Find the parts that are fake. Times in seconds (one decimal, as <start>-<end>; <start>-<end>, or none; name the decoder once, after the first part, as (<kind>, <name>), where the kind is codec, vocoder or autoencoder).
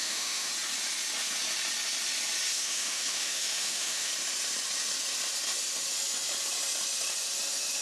0.0-0.5 (autoencoder, DAC-VAE); 2.5-4.1